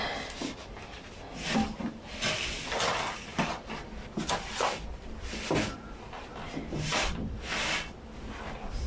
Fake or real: real